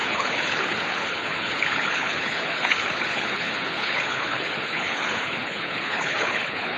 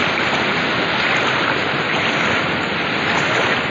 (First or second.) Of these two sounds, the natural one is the second